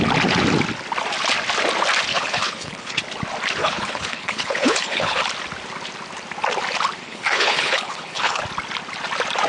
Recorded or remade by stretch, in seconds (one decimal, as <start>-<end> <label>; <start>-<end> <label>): 0.0-2.1 recorded; 2.1-3.0 remade; 3.0-3.6 recorded; 3.6-5.2 remade; 5.2-7.0 recorded; 7.0-8.4 remade; 8.4-9.5 recorded